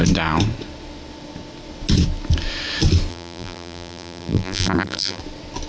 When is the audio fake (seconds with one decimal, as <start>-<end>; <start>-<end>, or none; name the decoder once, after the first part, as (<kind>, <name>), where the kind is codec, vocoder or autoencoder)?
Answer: 3.1-5.2 (vocoder, BigVGAN v2)